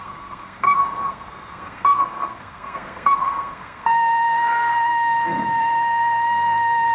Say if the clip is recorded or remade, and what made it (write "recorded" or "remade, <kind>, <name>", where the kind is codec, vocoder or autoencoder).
remade, codec, SNAC